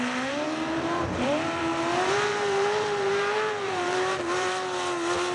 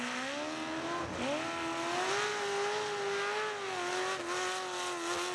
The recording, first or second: second